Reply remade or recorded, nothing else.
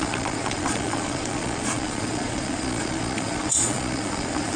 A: remade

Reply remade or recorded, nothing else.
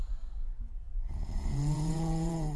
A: remade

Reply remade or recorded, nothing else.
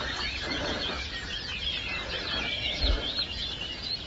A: remade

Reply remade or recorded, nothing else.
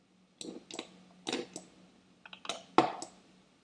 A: recorded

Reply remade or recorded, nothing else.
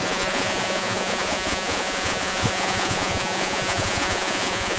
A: remade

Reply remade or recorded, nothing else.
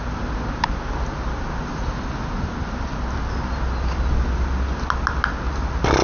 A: recorded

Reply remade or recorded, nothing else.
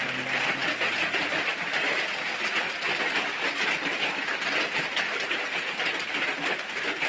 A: recorded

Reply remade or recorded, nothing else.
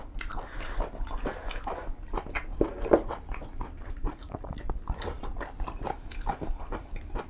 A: recorded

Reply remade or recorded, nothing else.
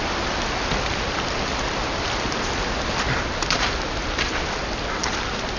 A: recorded